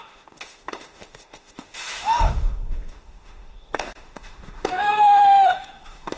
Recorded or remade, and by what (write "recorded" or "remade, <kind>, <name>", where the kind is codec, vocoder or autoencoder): remade, autoencoder, DAC-VAE